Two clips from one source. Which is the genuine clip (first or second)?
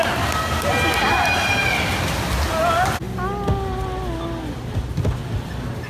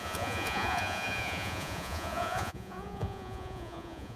first